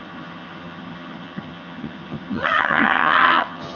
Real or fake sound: fake